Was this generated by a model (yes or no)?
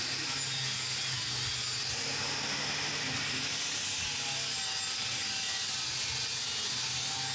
no